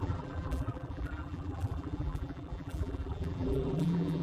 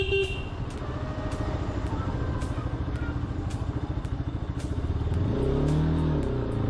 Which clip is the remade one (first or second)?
first